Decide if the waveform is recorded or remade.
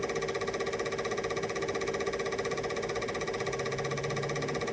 recorded